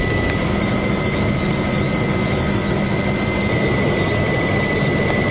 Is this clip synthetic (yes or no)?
no